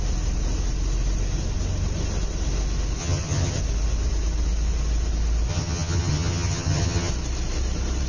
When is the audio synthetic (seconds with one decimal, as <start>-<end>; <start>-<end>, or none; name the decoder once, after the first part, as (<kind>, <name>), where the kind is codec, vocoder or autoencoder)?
3.0-3.6 (vocoder, HiFi-GAN); 5.5-7.1